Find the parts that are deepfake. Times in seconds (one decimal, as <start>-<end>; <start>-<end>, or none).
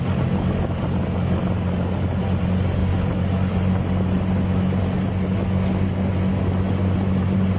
none